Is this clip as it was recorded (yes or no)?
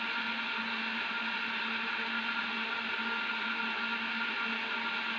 yes